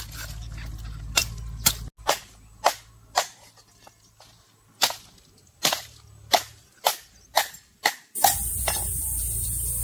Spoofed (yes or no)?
no